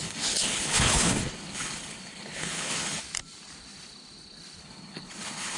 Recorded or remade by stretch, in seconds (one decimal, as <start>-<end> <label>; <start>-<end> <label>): 0.0-3.0 remade; 3.0-4.6 recorded; 4.6-5.6 remade